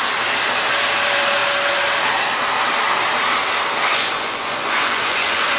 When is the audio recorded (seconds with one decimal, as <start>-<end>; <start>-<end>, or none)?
0.0-3.9